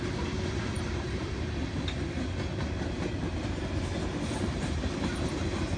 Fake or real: real